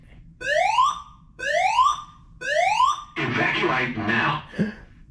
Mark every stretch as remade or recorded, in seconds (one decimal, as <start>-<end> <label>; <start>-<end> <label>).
0.0-0.6 recorded; 0.6-1.9 remade; 1.9-4.4 recorded; 4.4-5.1 remade